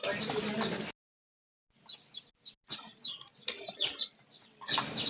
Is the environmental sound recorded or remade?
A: recorded